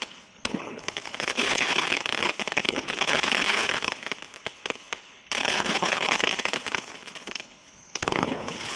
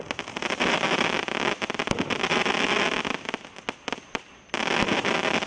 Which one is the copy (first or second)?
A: first